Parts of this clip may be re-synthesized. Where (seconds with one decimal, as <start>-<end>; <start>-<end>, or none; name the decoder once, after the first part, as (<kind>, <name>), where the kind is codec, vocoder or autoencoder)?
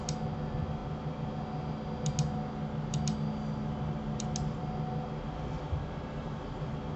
none